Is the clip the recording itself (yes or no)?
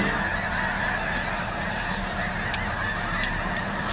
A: yes